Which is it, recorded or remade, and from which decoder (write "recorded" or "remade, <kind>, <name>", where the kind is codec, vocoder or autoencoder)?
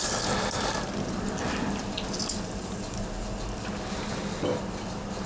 recorded